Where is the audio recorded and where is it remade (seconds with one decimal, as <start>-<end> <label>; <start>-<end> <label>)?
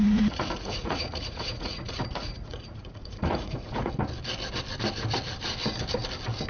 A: 0.0-3.9 remade; 3.9-6.5 recorded